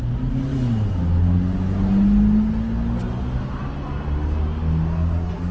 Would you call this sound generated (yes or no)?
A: no